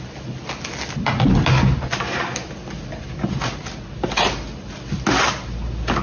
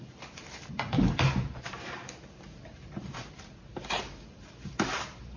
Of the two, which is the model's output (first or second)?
second